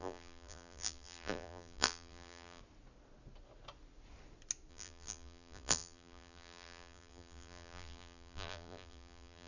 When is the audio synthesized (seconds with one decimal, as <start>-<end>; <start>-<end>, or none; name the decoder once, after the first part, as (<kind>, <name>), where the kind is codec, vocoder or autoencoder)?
0.0-2.6 (vocoder, BigVGAN v2); 4.7-9.5